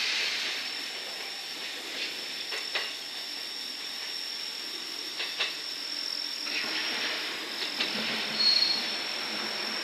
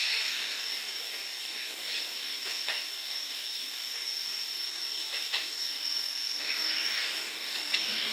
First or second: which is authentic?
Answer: first